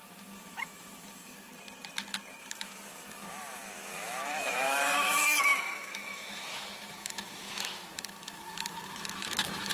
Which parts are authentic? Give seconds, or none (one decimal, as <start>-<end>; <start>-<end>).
1.5-2.4